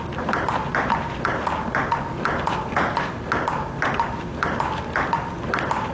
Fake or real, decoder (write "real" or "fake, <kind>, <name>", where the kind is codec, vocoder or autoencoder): real